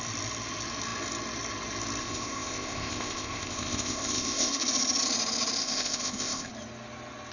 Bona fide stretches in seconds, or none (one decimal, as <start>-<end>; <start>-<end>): 0.0-2.0; 4.5-5.6; 6.5-7.3